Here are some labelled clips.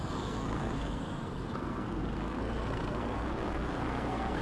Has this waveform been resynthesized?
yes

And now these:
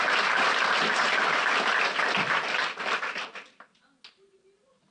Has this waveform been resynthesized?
no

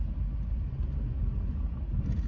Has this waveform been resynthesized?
no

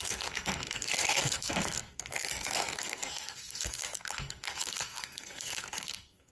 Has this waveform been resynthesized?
yes